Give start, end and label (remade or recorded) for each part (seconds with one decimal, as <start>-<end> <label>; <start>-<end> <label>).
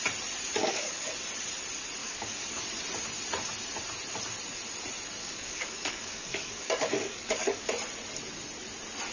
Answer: 0.0-0.6 recorded; 0.6-1.1 remade; 1.1-2.0 recorded; 2.0-2.6 remade; 2.6-5.2 recorded; 5.2-7.7 remade; 7.7-9.1 recorded